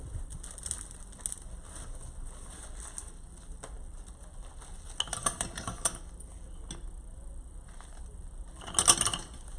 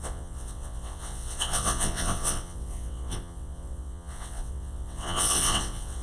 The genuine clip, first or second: first